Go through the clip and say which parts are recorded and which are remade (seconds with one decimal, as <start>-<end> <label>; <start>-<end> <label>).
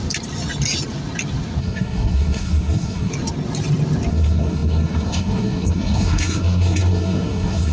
0.0-1.6 recorded; 1.6-3.1 remade; 3.1-4.1 recorded; 4.1-7.7 remade